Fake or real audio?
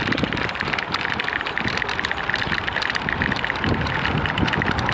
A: fake